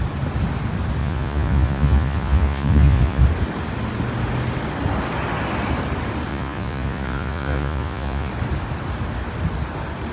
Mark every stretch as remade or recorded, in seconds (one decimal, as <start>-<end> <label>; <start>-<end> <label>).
0.0-1.0 recorded; 1.0-3.2 remade; 3.2-6.3 recorded; 6.3-8.3 remade; 8.3-10.1 recorded